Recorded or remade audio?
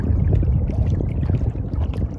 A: recorded